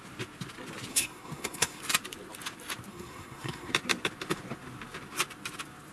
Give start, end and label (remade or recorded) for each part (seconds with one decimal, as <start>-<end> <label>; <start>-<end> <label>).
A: 0.0-0.9 recorded; 0.9-1.8 remade; 1.8-2.9 recorded; 2.9-3.7 remade; 3.7-5.9 recorded